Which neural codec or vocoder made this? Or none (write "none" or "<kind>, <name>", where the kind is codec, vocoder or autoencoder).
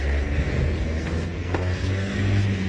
codec, SNAC